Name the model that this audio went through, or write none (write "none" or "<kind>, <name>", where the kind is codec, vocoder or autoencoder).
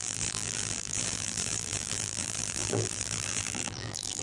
vocoder, BigVGAN v2